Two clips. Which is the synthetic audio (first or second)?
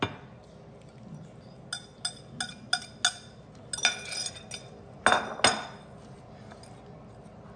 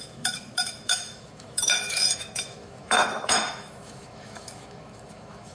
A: second